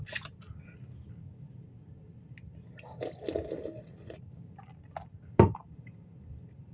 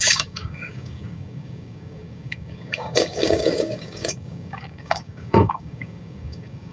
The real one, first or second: first